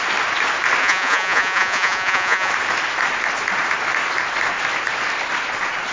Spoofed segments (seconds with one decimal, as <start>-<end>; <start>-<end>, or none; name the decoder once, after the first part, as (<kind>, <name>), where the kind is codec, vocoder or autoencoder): 0.8-2.5 (vocoder, Vocos)